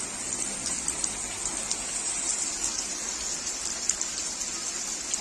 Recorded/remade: recorded